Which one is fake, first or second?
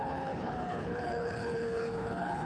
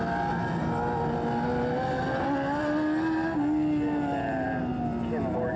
first